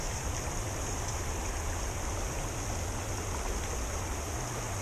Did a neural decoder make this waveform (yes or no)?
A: no